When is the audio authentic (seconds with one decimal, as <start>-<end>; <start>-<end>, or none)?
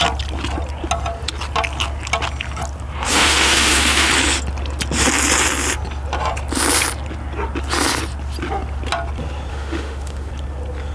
0.0-3.1; 4.1-9.5; 10.3-10.9